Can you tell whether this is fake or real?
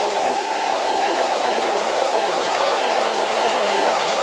fake